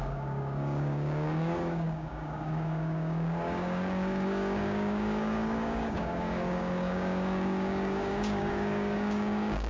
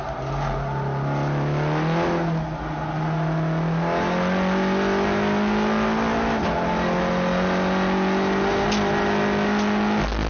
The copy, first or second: first